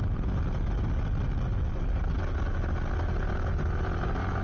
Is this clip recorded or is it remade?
recorded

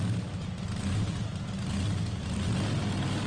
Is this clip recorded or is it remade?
recorded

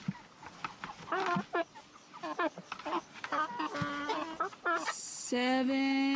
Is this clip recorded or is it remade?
recorded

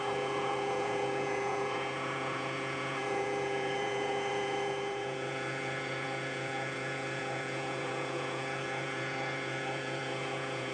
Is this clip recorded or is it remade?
remade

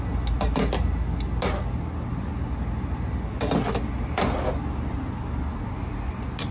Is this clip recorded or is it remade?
recorded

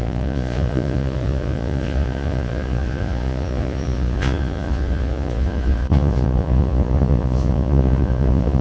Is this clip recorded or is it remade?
remade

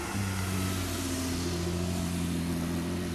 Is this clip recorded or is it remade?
recorded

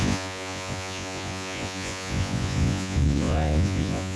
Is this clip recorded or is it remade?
remade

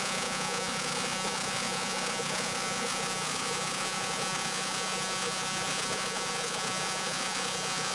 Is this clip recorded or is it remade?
remade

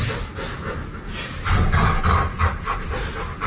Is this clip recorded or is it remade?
recorded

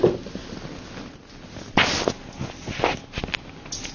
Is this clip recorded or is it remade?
recorded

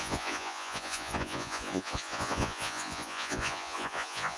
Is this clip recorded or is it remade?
remade